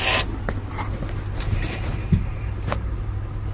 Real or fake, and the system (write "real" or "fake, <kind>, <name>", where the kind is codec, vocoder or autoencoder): real